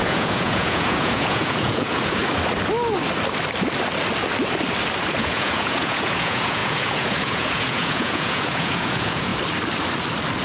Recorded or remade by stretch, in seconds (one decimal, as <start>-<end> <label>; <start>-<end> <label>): 0.0-2.2 remade; 2.2-5.2 recorded; 5.2-9.3 remade; 9.3-10.4 recorded